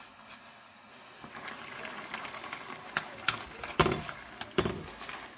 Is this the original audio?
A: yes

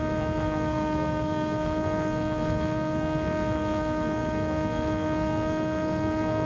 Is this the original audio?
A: no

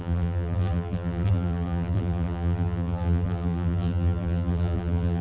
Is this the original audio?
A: no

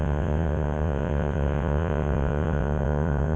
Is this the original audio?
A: no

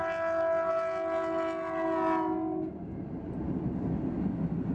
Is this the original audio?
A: yes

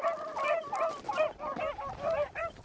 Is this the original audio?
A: yes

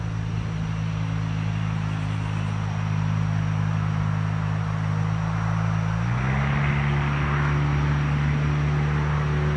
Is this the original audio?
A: yes